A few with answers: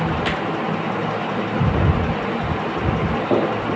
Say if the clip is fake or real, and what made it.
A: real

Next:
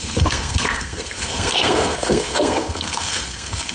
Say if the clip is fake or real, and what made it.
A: fake, codec, SNAC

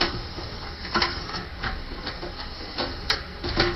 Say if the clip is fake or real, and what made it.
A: fake, codec, SNAC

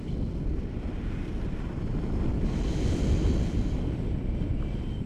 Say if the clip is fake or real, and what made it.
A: real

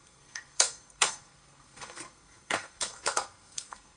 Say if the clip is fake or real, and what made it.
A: fake, codec, SNAC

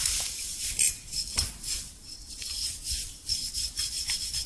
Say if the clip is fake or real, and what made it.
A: real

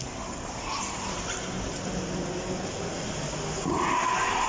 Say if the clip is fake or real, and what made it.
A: real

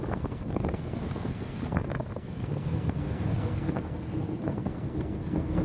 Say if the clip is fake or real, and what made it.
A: fake, codec, SNAC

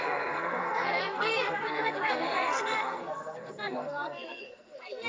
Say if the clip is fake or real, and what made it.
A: fake, codec, SNAC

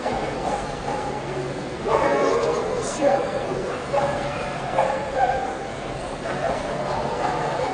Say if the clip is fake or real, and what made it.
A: fake, codec, SNAC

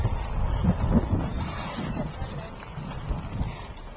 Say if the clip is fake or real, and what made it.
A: real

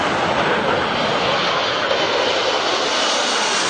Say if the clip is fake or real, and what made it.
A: real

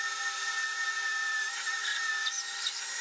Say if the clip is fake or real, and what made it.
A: real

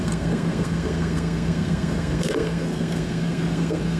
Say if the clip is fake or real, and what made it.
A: fake, codec, SNAC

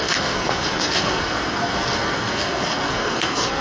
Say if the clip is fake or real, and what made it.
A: fake, codec, SNAC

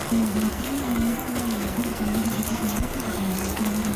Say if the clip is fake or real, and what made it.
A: fake, codec, SNAC